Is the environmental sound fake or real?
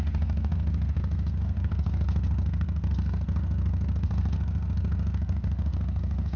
fake